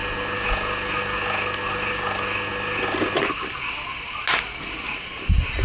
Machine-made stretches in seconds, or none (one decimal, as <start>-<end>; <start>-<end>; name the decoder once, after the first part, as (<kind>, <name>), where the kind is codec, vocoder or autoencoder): none